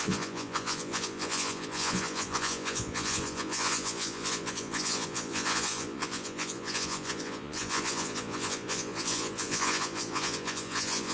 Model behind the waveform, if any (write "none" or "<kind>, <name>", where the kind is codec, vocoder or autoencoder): vocoder, Vocos